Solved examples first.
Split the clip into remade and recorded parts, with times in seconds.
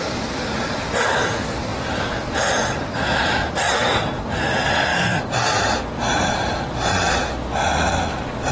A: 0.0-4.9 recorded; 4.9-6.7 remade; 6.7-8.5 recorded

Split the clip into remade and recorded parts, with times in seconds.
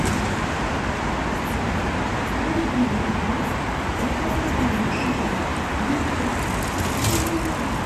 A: 0.0-3.3 recorded; 3.3-6.2 remade; 6.2-7.9 recorded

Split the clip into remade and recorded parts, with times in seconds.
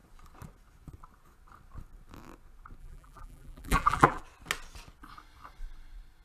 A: 0.0-2.8 recorded; 2.8-4.2 remade; 4.2-6.2 recorded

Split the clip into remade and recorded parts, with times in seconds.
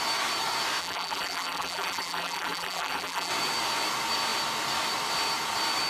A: 0.0-0.8 recorded; 0.8-3.3 remade; 3.3-5.9 recorded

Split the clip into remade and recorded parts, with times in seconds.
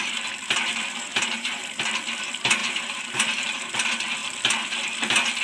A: 0.0-1.1 recorded; 1.1-1.6 remade; 1.6-2.6 recorded; 2.6-3.7 remade; 3.7-5.4 recorded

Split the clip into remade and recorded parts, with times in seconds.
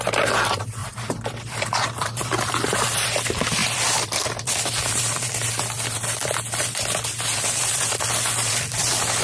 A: 0.0-9.2 remade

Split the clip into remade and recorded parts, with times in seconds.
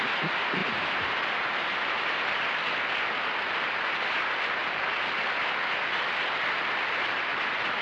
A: 0.0-0.6 recorded; 0.6-2.1 remade; 2.1-7.8 recorded